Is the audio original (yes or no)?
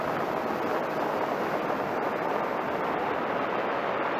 yes